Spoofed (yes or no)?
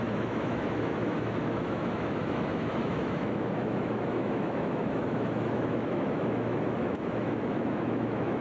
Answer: yes